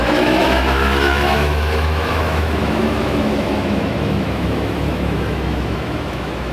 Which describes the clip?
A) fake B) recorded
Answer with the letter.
A